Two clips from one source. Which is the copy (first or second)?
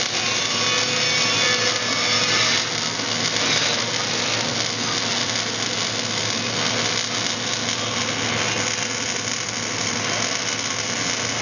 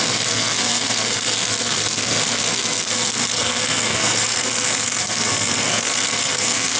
second